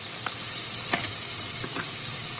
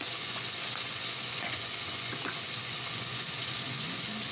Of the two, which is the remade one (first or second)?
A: second